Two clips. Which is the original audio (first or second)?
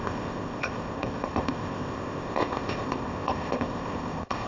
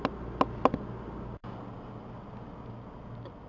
second